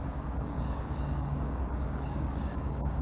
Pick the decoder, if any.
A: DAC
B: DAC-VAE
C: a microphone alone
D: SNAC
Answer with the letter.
A